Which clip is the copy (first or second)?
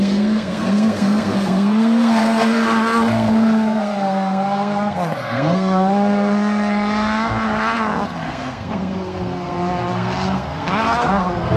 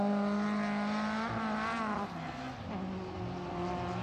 first